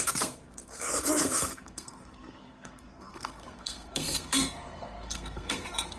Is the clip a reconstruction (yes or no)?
yes